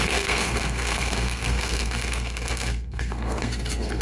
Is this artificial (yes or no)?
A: yes